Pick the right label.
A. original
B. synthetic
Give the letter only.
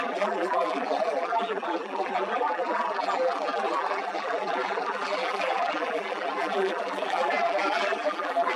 B